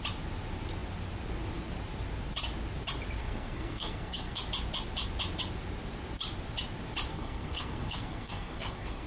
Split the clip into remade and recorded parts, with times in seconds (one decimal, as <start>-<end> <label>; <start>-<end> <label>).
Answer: 0.0-3.2 recorded; 3.2-4.4 remade; 4.4-7.1 recorded; 7.1-9.1 remade